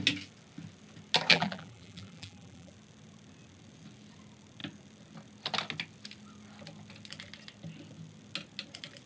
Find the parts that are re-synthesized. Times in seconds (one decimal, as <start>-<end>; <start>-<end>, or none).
1.3-2.7